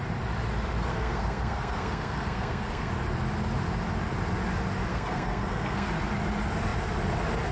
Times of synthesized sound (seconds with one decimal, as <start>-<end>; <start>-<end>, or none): 0.9-2.9; 4.9-5.9